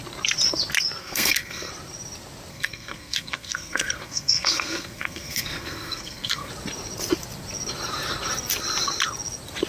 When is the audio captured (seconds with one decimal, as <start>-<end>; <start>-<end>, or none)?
0.0-1.0; 1.7-2.5; 6.5-9.7